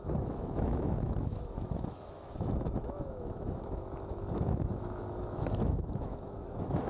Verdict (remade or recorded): remade